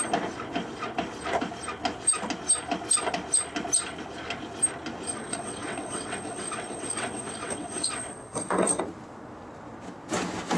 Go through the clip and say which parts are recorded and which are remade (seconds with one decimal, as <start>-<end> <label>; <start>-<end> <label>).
0.0-5.1 recorded; 5.1-8.8 remade; 8.8-10.6 recorded